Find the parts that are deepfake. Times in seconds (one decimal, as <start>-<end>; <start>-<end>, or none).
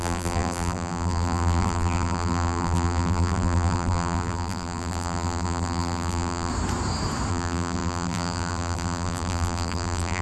0.0-6.5; 7.3-10.2